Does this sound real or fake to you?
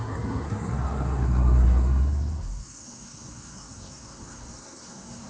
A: fake